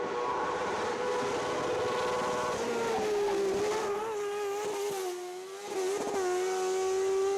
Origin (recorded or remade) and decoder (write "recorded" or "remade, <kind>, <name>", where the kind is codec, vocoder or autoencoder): recorded